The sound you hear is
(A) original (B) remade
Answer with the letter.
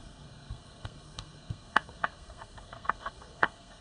B